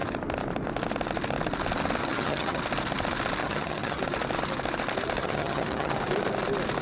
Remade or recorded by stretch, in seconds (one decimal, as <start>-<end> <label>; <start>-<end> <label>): 0.0-2.0 recorded; 2.0-2.6 remade; 2.6-3.4 recorded; 3.4-4.0 remade; 4.0-5.2 recorded; 5.2-5.9 remade; 5.9-6.8 recorded

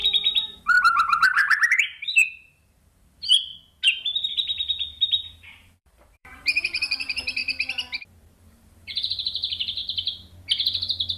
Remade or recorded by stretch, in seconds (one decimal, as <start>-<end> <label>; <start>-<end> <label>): 0.0-3.5 remade; 3.5-4.3 recorded; 4.3-7.4 remade; 7.4-8.4 recorded; 8.4-9.8 remade; 9.8-11.2 recorded

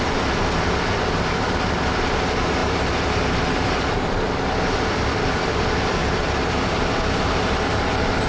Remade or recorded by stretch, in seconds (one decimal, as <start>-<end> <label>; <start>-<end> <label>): 0.0-2.6 recorded; 2.6-3.9 remade; 3.9-6.0 recorded; 6.0-7.7 remade; 7.7-8.3 recorded

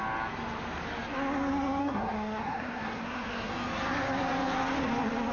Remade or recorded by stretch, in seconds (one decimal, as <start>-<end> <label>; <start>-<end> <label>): 0.0-1.8 recorded; 1.8-3.5 remade; 3.5-5.3 recorded